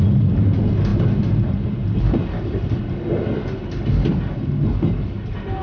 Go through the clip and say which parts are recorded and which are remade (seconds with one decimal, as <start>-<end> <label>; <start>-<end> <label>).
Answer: 0.0-5.6 recorded